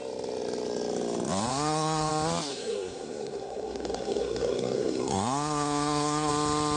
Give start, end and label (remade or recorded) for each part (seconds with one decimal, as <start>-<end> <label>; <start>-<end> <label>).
0.0-1.5 recorded; 1.5-2.1 remade; 2.1-2.5 recorded; 2.5-6.3 remade; 6.3-6.8 recorded